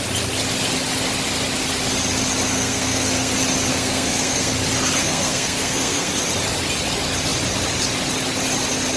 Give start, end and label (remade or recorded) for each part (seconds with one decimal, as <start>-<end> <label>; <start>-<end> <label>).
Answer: 0.0-2.5 recorded; 2.5-3.3 remade; 3.3-3.7 recorded; 3.7-4.5 remade; 4.5-5.0 recorded; 5.0-6.1 remade; 6.1-9.0 recorded